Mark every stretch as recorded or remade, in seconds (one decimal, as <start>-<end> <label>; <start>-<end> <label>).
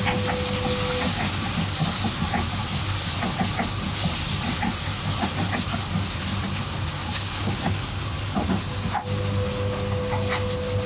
0.0-7.0 recorded; 7.0-8.1 remade; 8.1-10.9 recorded